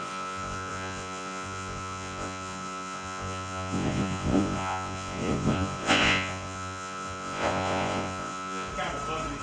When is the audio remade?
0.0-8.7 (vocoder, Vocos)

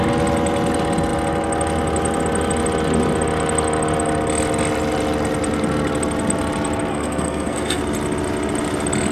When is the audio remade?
6.9-7.8 (codec, SNAC)

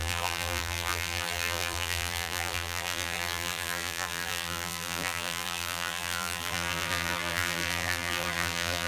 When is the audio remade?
0.0-8.9 (vocoder, BigVGAN v2)

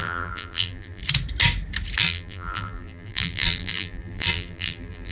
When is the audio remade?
0.0-1.0 (vocoder, BigVGAN v2); 2.0-5.1

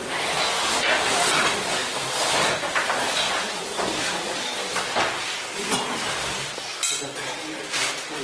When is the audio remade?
1.0-8.2 (vocoder, BigVGAN v2)

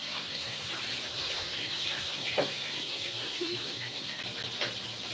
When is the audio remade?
0.0-0.7 (codec, SNAC); 1.1-4.2